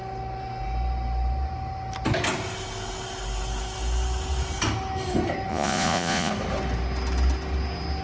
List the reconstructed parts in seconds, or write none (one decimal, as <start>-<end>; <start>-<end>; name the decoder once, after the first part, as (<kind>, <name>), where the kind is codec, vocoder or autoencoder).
5.5-6.3 (vocoder, Vocos)